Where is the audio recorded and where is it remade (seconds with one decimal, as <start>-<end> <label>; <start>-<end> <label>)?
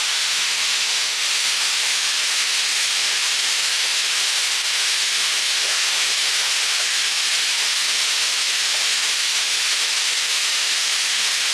0.0-11.5 remade